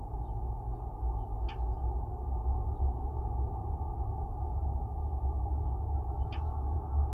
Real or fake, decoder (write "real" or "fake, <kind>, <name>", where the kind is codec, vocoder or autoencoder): real